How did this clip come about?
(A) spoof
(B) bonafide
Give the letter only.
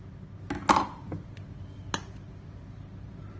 B